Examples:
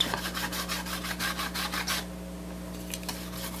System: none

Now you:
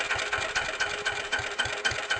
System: none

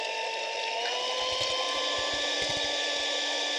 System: none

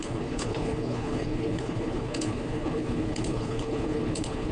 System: codec, HILCodec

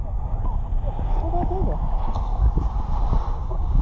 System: none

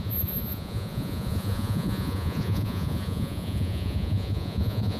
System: vocoder, Vocos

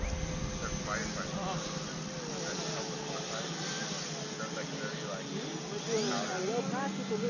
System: none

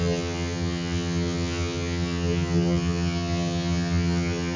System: vocoder, HiFi-GAN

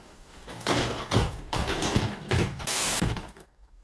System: codec, DAC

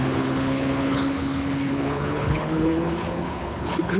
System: codec, HILCodec